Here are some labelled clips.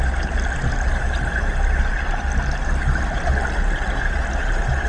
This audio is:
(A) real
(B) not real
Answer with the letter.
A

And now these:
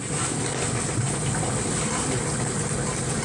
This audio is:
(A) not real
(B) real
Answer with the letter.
B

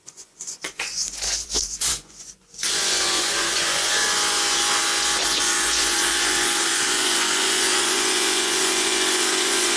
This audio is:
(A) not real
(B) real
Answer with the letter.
A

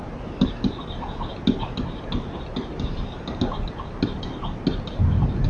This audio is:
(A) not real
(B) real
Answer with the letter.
B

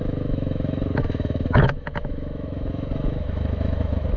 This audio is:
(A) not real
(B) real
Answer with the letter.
A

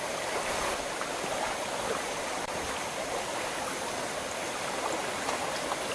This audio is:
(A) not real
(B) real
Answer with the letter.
B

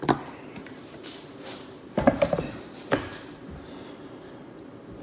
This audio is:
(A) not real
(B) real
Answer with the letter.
A